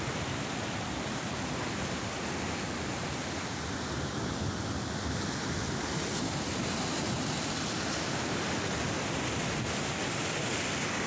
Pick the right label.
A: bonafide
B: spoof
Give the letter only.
A